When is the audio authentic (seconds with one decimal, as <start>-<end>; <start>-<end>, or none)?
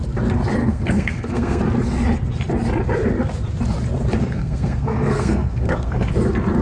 0.0-0.6; 1.6-4.2; 6.1-6.6